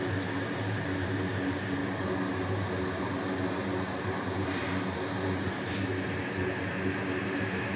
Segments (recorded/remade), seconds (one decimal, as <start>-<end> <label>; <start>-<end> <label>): 0.0-1.8 remade; 1.8-3.0 recorded; 3.0-5.9 remade; 5.9-6.6 recorded; 6.6-7.8 remade